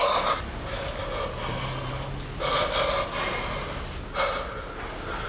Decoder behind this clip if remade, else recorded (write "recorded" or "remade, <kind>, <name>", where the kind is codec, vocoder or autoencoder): recorded